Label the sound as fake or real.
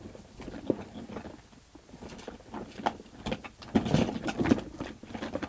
real